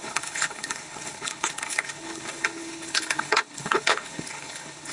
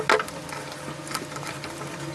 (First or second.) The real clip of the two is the second